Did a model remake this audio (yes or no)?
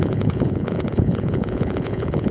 yes